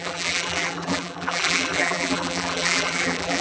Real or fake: fake